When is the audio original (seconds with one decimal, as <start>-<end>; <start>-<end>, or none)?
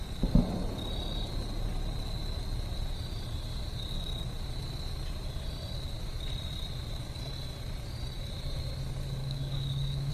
0.0-9.2